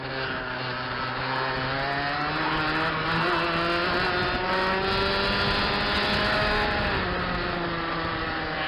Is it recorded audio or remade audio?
recorded